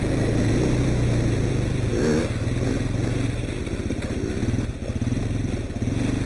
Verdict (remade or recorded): recorded